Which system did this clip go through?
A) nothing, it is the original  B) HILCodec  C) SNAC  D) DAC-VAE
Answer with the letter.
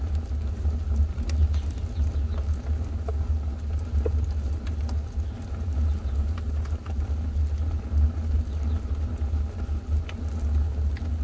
A